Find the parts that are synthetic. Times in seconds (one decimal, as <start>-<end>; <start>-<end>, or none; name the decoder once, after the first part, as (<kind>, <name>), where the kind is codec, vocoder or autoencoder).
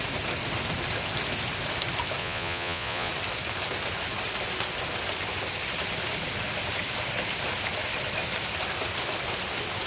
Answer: 2.2-3.1 (vocoder, Vocos)